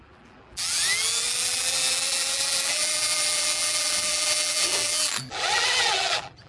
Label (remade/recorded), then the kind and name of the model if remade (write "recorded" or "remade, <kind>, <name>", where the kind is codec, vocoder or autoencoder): remade, vocoder, BigVGAN v2